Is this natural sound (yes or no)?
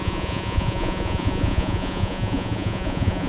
no